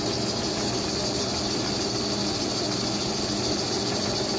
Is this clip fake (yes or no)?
no